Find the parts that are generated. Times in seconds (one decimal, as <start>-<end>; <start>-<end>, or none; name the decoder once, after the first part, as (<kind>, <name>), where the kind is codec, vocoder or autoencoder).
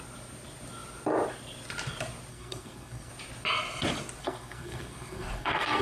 2.3-3.1 (codec, SNAC); 4.2-5.8